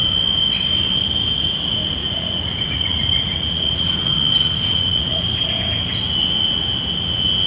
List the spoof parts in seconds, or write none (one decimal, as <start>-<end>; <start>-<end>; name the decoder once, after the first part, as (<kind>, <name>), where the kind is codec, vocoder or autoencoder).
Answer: 2.0-5.2 (vocoder, Vocos)